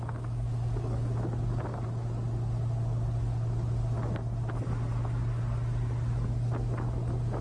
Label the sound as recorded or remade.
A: recorded